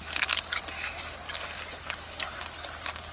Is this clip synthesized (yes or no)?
no